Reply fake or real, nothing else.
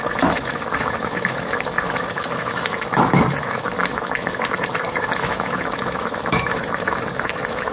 fake